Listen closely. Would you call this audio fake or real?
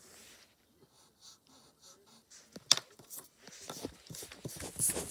real